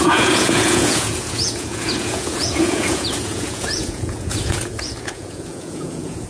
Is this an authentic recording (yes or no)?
no